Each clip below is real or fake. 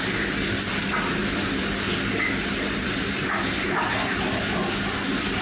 real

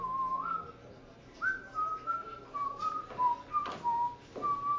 real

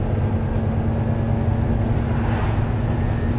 real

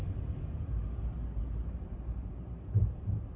real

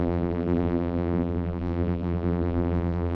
fake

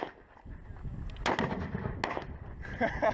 real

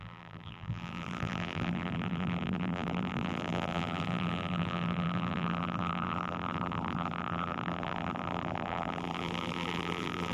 fake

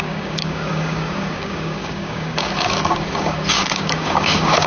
fake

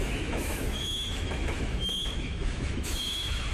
fake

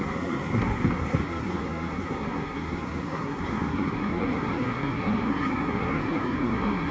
fake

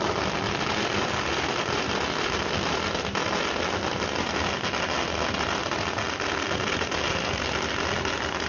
real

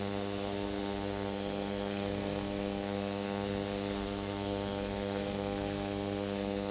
fake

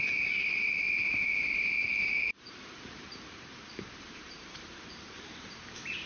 fake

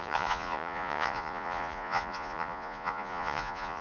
fake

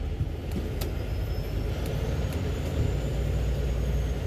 real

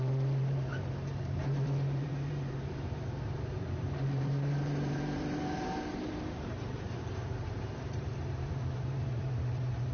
fake